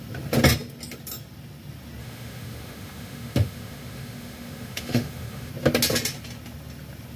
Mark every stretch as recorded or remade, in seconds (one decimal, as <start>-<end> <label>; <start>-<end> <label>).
0.0-2.0 recorded; 2.0-5.5 remade; 5.5-7.2 recorded